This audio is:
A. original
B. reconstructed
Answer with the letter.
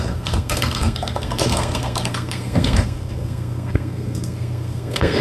B